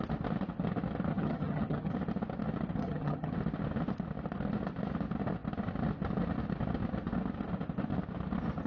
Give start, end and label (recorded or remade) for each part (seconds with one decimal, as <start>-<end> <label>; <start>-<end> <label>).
0.0-1.1 recorded; 1.1-1.9 remade; 1.9-2.8 recorded; 2.8-3.3 remade; 3.3-8.7 recorded

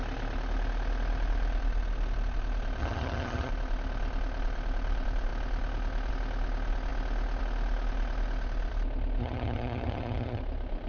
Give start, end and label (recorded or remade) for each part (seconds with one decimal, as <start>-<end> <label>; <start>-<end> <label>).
0.0-2.8 recorded; 2.8-3.5 remade; 3.5-9.2 recorded; 9.2-10.4 remade; 10.4-10.9 recorded